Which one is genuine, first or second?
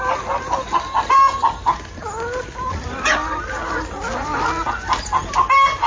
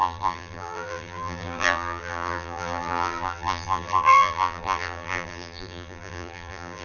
first